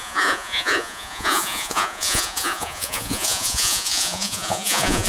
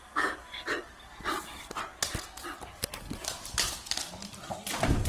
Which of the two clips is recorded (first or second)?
second